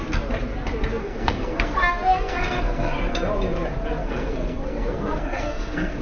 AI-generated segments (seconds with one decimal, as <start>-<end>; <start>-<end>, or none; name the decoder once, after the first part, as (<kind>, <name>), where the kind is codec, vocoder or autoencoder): 1.0-3.2 (codec, SNAC); 4.0-6.0